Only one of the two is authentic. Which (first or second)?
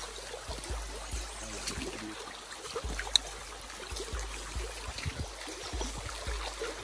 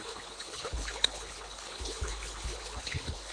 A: first